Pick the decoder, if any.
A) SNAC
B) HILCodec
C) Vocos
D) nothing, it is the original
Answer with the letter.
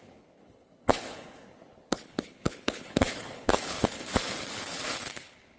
B